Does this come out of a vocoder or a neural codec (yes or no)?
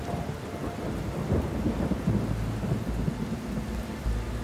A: no